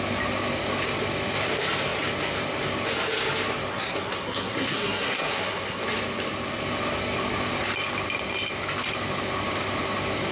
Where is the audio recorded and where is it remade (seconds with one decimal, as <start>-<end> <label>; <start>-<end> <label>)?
0.0-3.7 recorded; 3.7-5.8 remade; 5.8-10.3 recorded